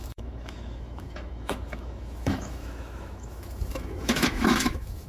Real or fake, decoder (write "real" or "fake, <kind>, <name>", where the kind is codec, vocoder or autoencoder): fake, autoencoder, DAC-VAE